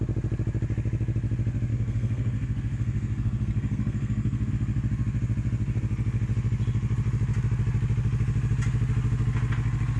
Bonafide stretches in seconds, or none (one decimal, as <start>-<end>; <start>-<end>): 0.0-1.7; 4.5-10.0